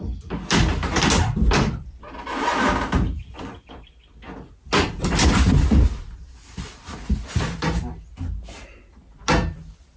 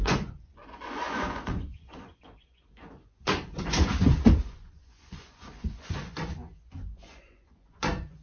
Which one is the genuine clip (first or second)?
first